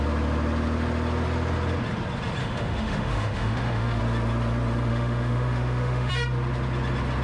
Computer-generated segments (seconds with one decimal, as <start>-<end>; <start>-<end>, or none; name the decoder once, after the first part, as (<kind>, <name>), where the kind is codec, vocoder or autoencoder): 2.4-4.0 (autoencoder, DAC-VAE); 4.9-6.1